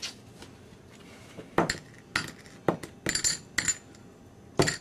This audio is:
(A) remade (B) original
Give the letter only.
B